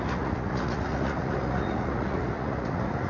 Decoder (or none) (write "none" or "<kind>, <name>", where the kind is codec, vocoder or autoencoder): vocoder, Vocos